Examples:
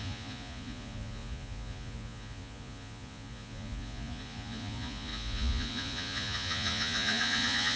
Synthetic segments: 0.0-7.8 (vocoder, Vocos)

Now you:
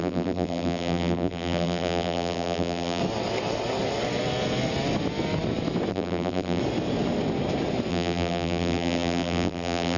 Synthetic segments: 0.0-3.0 (vocoder, BigVGAN v2); 5.9-6.6; 7.9-10.0

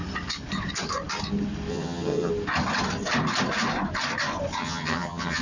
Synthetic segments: 1.7-2.3 (vocoder, HiFi-GAN); 4.6-5.4

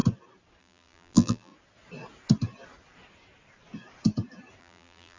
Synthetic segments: 0.6-1.5 (vocoder, BigVGAN v2); 4.6-5.2